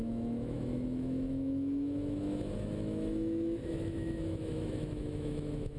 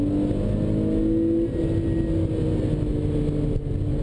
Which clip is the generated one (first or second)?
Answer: first